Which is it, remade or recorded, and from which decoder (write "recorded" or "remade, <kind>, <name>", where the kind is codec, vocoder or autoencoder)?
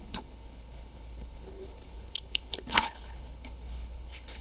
remade, codec, HILCodec